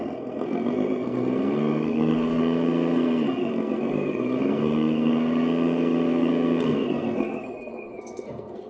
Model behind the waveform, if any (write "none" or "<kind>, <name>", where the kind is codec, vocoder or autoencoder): codec, SNAC